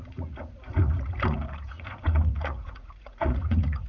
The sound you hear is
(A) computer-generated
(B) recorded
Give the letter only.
A